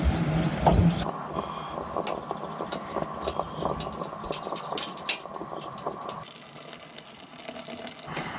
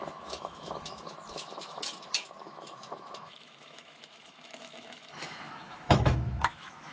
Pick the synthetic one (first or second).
second